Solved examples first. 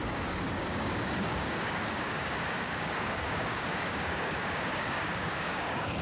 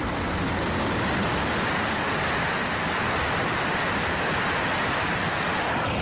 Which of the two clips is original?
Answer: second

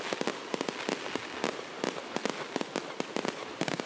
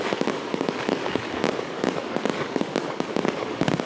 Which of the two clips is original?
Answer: first